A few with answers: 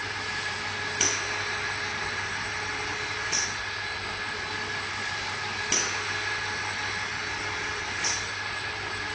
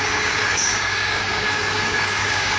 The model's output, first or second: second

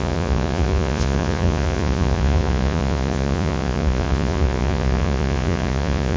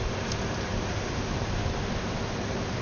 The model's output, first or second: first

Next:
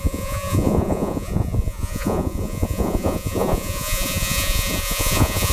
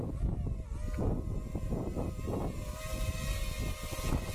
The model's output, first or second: first